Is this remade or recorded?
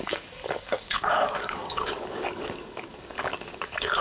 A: remade